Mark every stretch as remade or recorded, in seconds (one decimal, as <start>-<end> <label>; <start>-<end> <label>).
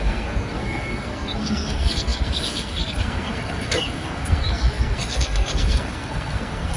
0.0-6.8 remade